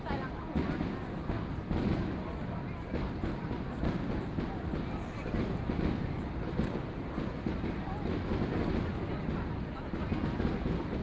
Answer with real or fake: real